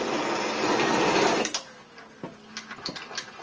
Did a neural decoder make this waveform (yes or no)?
no